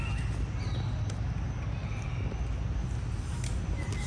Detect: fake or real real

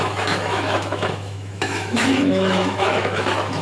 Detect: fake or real fake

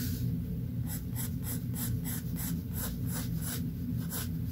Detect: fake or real real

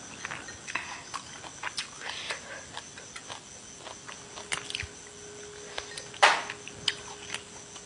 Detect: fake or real real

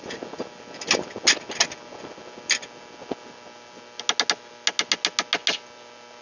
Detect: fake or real real